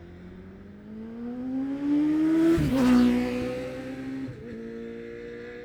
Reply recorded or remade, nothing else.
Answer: recorded